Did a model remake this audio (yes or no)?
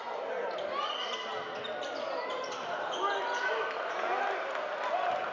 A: no